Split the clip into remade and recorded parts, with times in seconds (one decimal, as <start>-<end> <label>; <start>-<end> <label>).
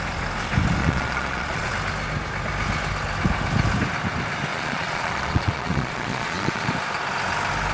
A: 0.0-0.8 recorded; 0.8-1.7 remade; 1.7-4.5 recorded; 4.5-6.7 remade; 6.7-7.7 recorded